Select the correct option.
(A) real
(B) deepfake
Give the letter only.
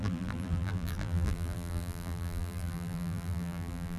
B